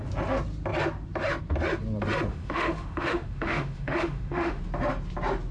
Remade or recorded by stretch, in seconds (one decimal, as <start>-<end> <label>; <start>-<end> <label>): 0.0-2.3 recorded; 2.3-4.6 remade; 4.6-5.5 recorded